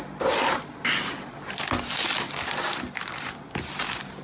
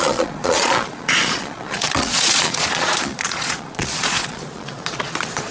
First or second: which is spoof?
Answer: second